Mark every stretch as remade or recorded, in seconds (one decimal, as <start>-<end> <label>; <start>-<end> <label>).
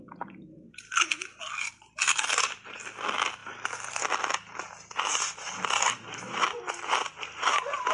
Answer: 0.0-7.9 recorded